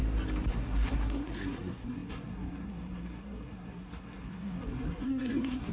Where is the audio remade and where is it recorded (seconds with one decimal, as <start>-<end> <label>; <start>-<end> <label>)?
0.0-0.5 recorded; 0.5-5.7 remade